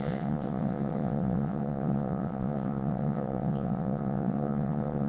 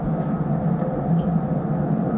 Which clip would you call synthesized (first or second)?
first